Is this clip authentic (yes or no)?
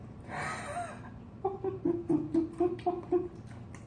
yes